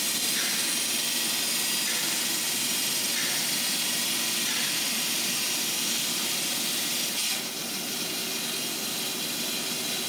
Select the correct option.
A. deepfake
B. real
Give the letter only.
A